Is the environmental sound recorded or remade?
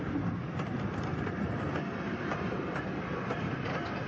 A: remade